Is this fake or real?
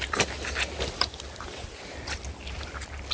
real